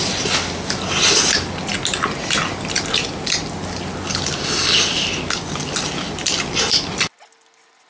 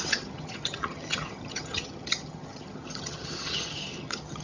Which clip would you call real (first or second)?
first